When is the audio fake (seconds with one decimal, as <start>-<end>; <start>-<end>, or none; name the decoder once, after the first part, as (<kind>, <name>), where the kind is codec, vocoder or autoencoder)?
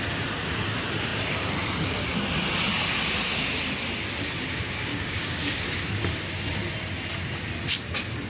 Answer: 4.9-5.6 (codec, DAC)